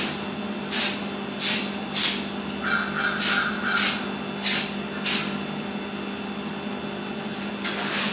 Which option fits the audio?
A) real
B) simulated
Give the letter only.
A